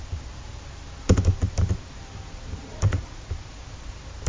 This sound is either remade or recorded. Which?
remade